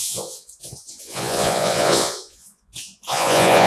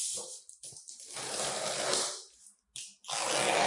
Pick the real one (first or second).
second